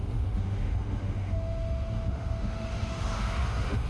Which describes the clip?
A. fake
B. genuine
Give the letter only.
A